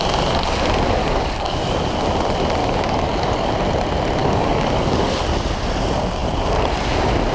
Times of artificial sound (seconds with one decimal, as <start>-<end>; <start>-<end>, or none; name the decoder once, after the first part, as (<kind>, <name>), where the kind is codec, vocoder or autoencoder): 1.0-1.8 (codec, DAC); 2.6-3.5; 4.2-5.2